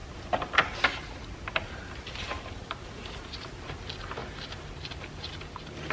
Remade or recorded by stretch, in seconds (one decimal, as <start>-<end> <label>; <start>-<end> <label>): 0.0-5.9 recorded